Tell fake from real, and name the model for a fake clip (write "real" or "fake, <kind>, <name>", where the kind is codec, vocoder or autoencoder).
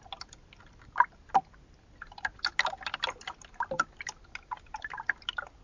real